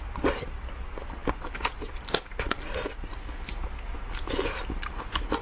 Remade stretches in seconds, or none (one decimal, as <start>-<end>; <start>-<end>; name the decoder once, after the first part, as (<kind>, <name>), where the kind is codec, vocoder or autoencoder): none